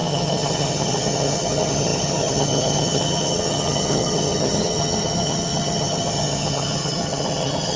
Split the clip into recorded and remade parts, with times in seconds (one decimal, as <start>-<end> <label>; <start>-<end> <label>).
0.0-7.8 remade

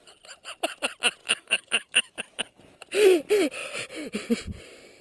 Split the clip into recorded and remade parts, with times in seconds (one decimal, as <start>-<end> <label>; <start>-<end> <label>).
0.0-1.2 recorded; 1.2-2.6 remade; 2.6-5.0 recorded

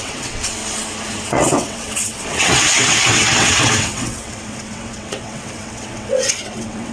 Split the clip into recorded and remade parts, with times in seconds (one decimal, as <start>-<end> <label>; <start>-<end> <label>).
0.0-0.6 remade; 0.6-1.3 recorded; 1.3-6.9 remade

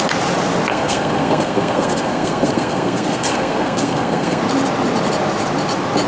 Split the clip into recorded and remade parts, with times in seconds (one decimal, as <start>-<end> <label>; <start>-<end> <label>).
0.0-0.7 recorded; 0.7-4.4 remade; 4.4-6.1 recorded

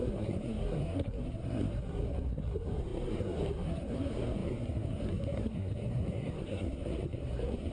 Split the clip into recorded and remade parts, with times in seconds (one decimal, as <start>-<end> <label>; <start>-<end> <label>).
0.0-7.7 remade

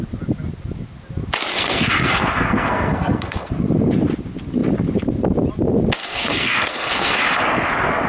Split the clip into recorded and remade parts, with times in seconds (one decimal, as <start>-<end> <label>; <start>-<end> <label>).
0.0-1.5 recorded; 1.5-3.5 remade; 3.5-6.0 recorded; 6.0-7.2 remade; 7.2-8.1 recorded

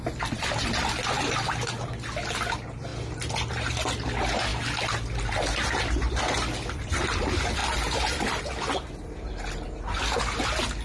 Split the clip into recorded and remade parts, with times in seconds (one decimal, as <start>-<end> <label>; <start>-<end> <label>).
0.0-10.8 recorded

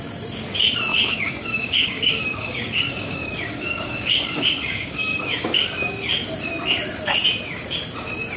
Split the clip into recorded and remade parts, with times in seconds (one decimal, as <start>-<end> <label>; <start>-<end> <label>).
0.0-0.9 recorded; 0.9-5.9 remade; 5.9-8.4 recorded